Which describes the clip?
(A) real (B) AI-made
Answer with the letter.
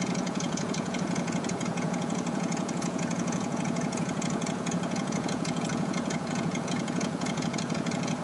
B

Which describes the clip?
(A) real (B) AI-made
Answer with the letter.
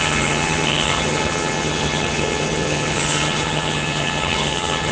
B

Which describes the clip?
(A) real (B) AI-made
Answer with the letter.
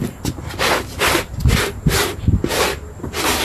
A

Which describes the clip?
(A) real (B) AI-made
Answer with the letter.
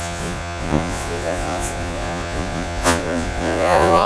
B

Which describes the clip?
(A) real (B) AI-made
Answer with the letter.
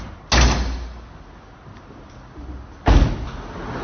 A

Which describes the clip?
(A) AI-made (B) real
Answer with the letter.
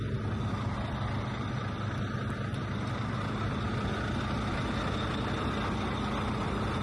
B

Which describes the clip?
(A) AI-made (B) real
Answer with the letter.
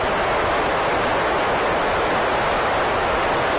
B